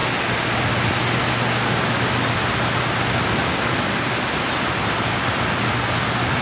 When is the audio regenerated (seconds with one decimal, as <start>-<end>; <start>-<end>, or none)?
none